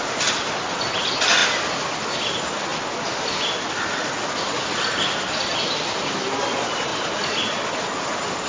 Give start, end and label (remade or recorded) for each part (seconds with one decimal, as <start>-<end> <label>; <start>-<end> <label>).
0.0-8.5 recorded